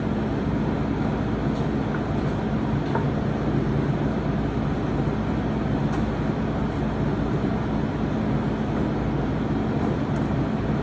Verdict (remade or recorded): recorded